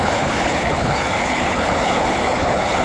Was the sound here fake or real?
fake